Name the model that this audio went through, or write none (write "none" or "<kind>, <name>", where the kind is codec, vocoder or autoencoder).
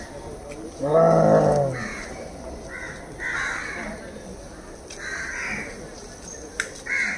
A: none